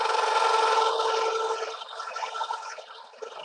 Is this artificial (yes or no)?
no